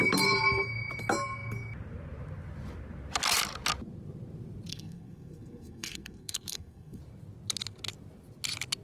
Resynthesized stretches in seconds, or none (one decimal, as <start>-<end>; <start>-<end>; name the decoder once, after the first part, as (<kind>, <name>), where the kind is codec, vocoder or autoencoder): 4.7-7.0 (codec, SNAC)

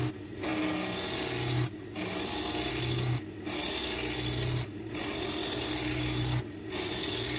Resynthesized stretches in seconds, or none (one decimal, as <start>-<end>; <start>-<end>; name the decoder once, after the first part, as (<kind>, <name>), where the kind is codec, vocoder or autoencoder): none

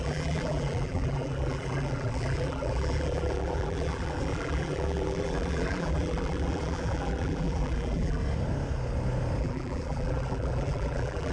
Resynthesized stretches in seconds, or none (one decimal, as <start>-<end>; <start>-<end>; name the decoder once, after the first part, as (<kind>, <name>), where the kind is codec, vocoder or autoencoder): 0.0-8.2 (vocoder, BigVGAN v2); 9.4-11.3

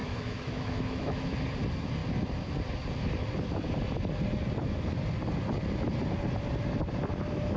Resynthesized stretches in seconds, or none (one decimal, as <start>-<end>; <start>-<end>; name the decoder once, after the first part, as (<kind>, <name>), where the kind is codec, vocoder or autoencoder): 0.0-1.3 (autoencoder, DAC-VAE)